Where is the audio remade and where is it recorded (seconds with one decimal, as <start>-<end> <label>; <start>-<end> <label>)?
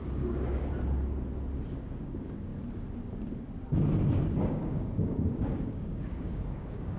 0.0-0.7 remade; 0.7-1.7 recorded; 1.7-2.5 remade; 2.5-4.1 recorded; 4.1-7.0 remade